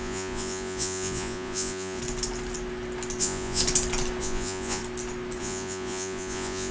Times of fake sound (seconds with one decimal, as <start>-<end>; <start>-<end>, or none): 0.0-2.0; 3.2-3.6; 4.2-4.8; 5.4-6.7